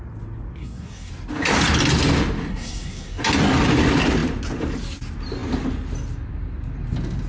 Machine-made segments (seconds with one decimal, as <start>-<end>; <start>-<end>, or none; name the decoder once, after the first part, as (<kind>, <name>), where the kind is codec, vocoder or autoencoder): 0.6-1.1 (codec, SNAC); 2.5-3.2